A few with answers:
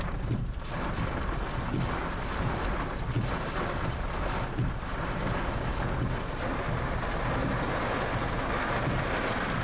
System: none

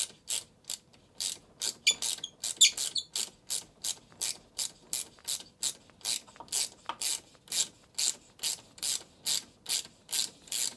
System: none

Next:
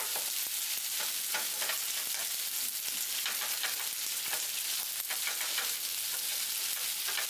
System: none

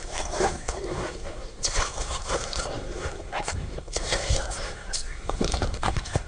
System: codec, SNAC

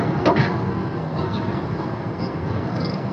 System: codec, SNAC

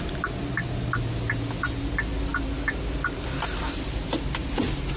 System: none